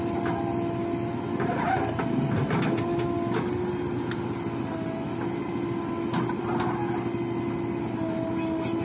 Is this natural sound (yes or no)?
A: yes